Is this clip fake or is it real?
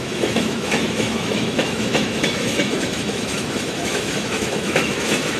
fake